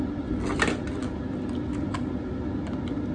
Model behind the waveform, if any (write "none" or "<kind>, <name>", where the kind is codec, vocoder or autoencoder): none